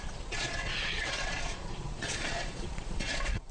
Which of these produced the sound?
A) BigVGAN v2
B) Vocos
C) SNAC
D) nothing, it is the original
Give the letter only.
B